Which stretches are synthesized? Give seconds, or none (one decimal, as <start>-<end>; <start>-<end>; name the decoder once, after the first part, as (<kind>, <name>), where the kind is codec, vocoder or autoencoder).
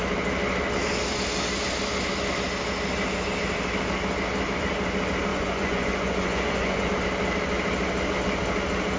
5.3-6.9 (vocoder, Vocos)